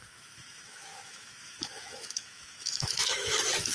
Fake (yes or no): yes